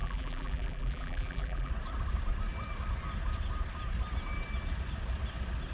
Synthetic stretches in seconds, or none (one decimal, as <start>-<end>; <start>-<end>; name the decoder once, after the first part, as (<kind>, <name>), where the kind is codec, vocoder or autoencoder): 0.0-1.7 (vocoder, BigVGAN v2)